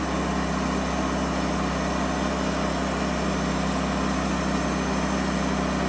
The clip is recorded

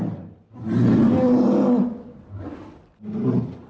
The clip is recorded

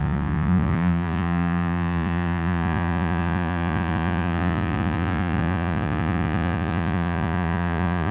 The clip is remade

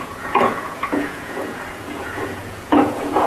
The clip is remade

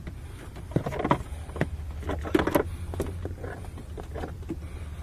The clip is recorded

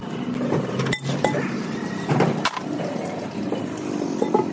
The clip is recorded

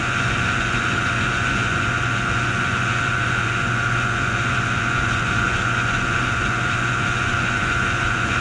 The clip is remade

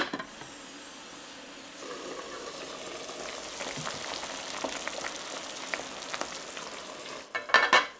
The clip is recorded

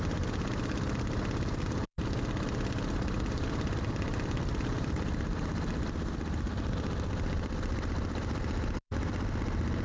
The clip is recorded